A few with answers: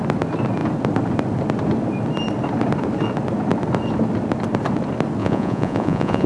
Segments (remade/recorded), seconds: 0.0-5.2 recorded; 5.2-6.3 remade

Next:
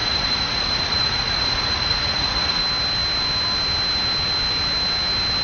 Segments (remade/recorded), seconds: 0.0-2.6 remade; 2.6-5.4 recorded

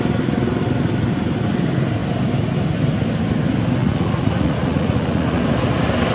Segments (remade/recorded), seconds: 0.0-3.8 recorded; 3.8-5.4 remade; 5.4-6.1 recorded

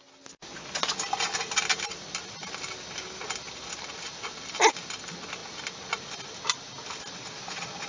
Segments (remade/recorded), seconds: 0.0-7.9 recorded